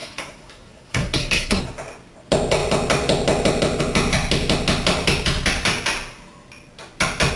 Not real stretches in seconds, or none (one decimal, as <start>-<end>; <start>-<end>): 0.0-1.6